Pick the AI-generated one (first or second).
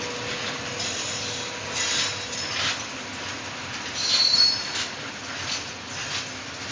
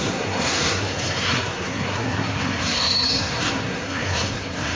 second